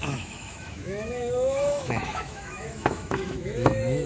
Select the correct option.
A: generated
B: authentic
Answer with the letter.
A